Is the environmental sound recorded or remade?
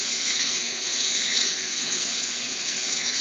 remade